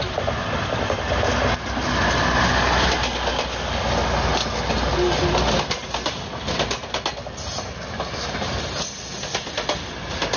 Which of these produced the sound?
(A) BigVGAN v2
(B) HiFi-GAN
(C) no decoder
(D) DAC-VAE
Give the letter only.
C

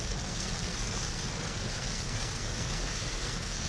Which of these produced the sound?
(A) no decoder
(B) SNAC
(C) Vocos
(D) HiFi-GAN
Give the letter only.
B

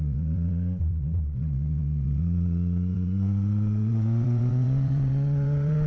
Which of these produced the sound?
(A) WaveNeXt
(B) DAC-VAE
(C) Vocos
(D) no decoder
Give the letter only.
A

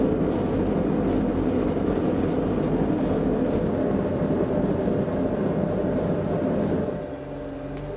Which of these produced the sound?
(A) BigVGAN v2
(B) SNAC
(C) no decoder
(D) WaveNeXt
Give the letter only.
C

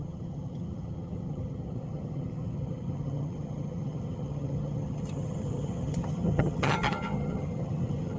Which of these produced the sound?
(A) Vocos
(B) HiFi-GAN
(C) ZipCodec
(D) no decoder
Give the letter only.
B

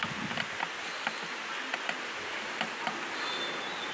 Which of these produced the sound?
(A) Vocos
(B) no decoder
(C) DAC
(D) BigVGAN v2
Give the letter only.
B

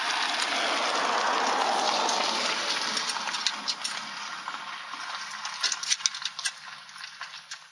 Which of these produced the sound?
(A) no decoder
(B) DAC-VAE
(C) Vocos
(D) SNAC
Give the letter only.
A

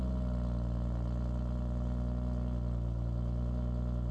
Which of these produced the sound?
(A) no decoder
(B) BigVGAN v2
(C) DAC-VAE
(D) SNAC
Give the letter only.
A